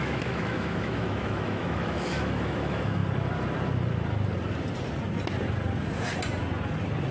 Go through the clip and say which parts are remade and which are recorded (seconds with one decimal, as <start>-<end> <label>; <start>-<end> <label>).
0.0-3.0 remade; 3.0-7.1 recorded